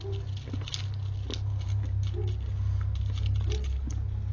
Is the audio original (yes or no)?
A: yes